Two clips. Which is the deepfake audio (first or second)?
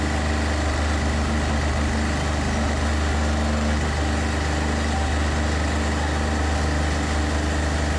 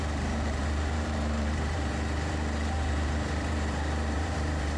second